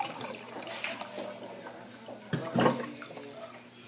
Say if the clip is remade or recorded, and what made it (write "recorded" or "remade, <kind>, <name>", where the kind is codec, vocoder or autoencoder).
recorded